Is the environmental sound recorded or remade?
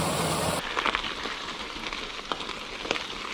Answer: recorded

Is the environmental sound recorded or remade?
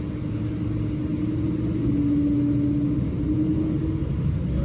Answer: recorded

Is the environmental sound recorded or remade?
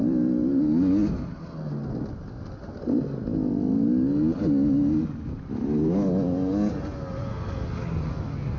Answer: recorded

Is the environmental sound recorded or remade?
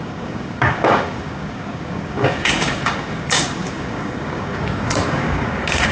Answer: remade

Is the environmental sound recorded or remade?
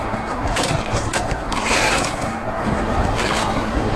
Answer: remade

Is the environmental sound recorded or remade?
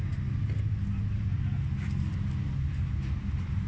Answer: recorded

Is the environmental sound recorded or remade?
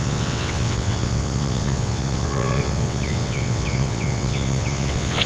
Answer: remade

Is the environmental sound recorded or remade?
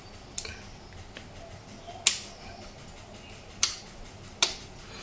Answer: recorded